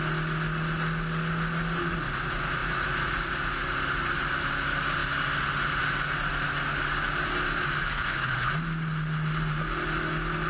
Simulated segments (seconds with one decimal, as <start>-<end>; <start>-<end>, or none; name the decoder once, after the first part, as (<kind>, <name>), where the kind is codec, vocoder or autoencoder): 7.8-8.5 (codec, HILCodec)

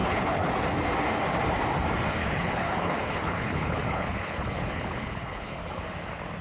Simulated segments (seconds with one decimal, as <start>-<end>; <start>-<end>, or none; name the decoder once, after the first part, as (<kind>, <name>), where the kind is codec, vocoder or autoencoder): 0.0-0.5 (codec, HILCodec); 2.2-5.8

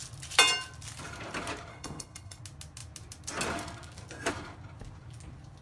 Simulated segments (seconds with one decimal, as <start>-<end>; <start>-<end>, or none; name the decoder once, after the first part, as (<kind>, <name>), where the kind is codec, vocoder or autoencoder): 1.7-2.4 (codec, HILCodec)

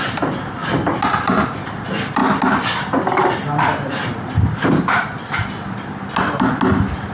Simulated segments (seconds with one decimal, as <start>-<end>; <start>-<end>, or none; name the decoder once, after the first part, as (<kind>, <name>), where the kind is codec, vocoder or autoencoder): none